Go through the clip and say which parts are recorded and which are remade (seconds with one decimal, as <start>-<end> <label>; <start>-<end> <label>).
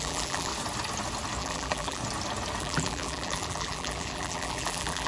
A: 0.0-0.5 remade; 0.5-1.4 recorded; 1.4-2.0 remade; 2.0-2.6 recorded; 2.6-5.1 remade